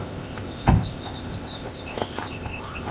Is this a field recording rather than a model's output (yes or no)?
no